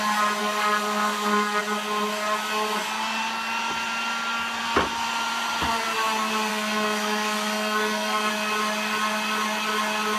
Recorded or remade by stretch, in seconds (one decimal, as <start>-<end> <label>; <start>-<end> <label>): 0.0-0.4 recorded; 0.4-1.6 remade; 1.6-6.5 recorded; 6.5-8.3 remade; 8.3-10.2 recorded